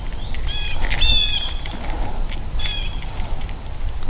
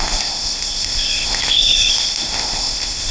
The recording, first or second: first